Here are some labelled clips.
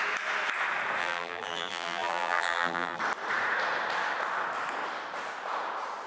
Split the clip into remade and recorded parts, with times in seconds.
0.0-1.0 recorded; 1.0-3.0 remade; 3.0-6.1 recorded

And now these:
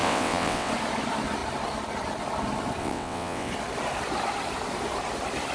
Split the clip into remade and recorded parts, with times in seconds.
0.0-0.7 remade; 0.7-2.8 recorded; 2.8-3.5 remade; 3.5-5.5 recorded

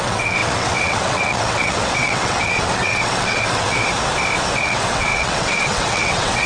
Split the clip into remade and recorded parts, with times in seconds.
0.0-3.9 remade; 3.9-4.5 recorded; 4.5-6.5 remade

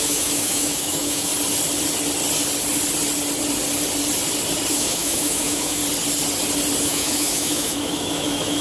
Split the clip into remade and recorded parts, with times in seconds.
0.0-1.3 remade; 1.3-4.7 recorded; 4.7-5.8 remade; 5.8-6.8 recorded; 6.8-8.6 remade

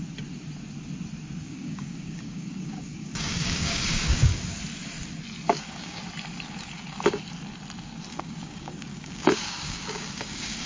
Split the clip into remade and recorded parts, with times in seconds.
0.0-1.4 recorded; 1.4-4.4 remade; 4.4-5.5 recorded; 5.5-6.0 remade; 6.0-8.1 recorded; 8.1-10.7 remade

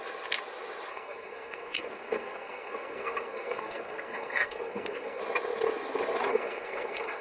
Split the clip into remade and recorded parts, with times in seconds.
0.0-0.9 recorded; 0.9-5.2 remade; 5.2-6.3 recorded; 6.3-7.2 remade

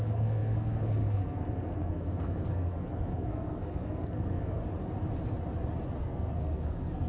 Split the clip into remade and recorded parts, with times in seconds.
0.0-4.6 remade; 4.6-6.0 recorded; 6.0-7.1 remade

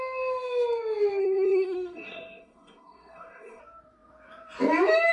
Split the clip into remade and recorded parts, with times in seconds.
0.0-1.2 recorded; 1.2-3.6 remade; 3.6-5.1 recorded